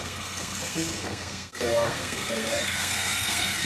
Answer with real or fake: fake